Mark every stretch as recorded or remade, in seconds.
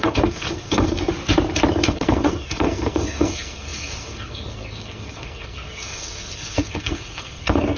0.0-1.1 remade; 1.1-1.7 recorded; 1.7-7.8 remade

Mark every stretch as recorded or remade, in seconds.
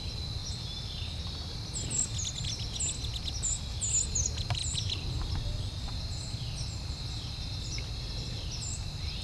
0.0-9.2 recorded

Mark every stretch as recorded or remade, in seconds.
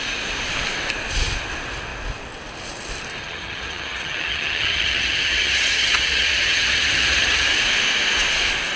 0.0-3.2 recorded; 3.2-7.6 remade; 7.6-8.8 recorded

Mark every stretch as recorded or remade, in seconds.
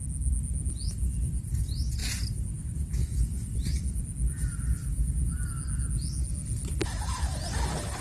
0.0-8.0 recorded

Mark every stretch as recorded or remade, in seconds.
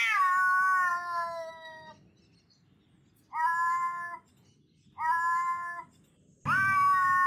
0.0-7.3 recorded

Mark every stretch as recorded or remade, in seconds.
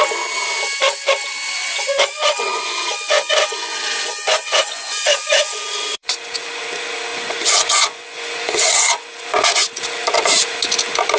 0.0-1.6 recorded; 1.6-6.6 remade; 6.6-7.1 recorded; 7.1-9.8 remade; 9.8-11.2 recorded